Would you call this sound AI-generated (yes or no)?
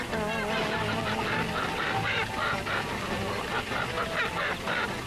no